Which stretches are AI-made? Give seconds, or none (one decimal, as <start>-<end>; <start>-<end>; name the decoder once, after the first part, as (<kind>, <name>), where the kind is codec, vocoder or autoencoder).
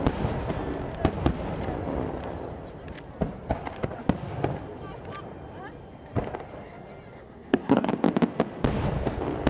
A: 7.2-7.9 (codec, SNAC)